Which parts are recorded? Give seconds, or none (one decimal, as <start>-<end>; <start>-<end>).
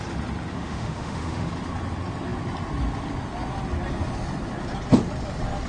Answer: 0.0-0.5; 1.5-5.7